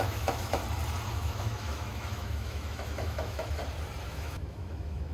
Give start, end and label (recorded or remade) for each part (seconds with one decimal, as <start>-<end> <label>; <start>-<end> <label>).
0.0-0.6 remade; 0.6-1.1 recorded; 1.1-3.6 remade; 3.6-4.1 recorded; 4.1-5.1 remade